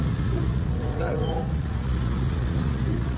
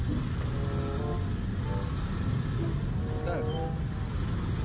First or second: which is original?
second